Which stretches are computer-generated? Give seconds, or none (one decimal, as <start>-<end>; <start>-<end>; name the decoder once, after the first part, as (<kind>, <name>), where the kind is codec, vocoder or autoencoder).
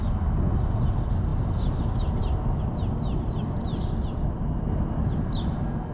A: none